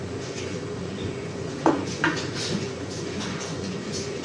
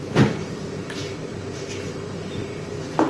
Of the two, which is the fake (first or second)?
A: first